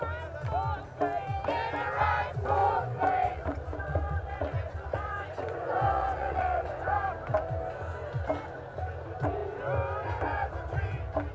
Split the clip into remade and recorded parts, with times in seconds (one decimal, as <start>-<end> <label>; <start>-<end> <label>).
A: 0.0-2.6 recorded; 2.6-7.0 remade; 7.0-11.3 recorded